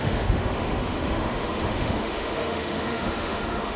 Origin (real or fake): fake